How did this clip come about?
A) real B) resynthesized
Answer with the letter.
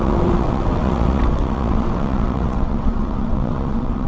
B